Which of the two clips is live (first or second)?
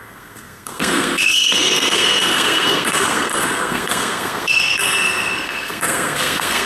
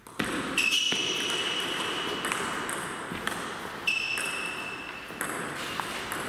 second